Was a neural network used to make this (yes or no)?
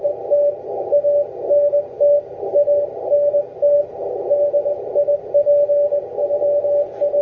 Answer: no